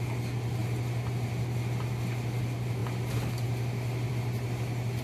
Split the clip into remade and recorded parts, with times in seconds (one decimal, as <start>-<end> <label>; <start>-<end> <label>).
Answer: 0.0-5.0 recorded